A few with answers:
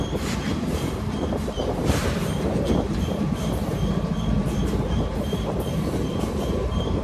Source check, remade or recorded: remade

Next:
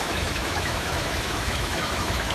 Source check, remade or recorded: remade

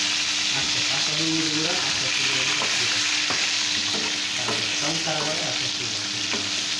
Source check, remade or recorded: recorded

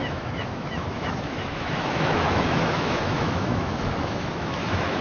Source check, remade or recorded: remade